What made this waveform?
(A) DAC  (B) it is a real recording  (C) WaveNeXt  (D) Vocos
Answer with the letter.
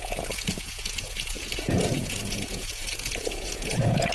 D